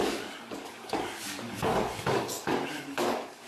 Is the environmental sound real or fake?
fake